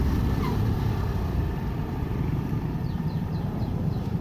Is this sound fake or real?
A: fake